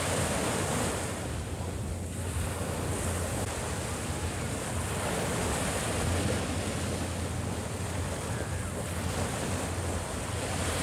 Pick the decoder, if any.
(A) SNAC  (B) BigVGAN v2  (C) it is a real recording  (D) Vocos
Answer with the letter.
C